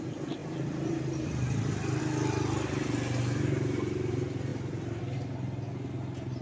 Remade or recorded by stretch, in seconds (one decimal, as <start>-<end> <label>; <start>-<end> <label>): 0.0-0.4 recorded; 0.4-2.0 remade; 2.0-4.5 recorded; 4.5-5.0 remade; 5.0-6.4 recorded